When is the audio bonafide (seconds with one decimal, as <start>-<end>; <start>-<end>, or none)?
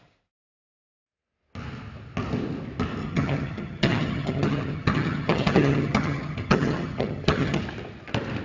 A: 0.0-3.0; 7.6-8.4